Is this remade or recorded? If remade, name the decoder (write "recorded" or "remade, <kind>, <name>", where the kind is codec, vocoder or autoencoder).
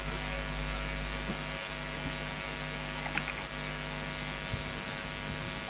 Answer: recorded